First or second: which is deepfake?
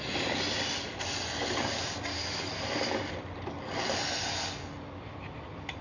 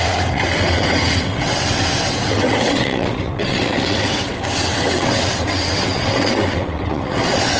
second